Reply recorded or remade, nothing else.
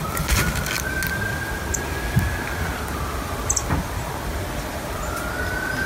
recorded